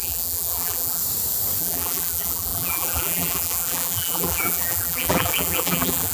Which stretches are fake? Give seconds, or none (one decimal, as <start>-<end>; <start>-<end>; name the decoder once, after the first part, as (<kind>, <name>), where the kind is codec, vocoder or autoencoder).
0.0-1.0 (vocoder, BigVGAN v2); 1.6-6.1